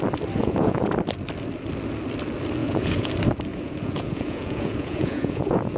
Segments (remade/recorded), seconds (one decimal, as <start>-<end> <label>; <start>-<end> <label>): 0.0-0.4 recorded; 0.4-0.9 remade; 0.9-2.6 recorded; 2.6-3.1 remade; 3.1-3.5 recorded; 3.5-5.8 remade